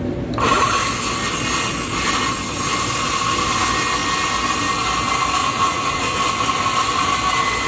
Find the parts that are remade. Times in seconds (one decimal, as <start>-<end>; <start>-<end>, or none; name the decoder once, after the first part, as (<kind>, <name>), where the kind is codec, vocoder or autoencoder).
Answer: 5.4-6.2 (vocoder, Vocos)